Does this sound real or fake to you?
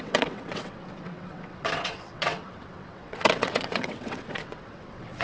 fake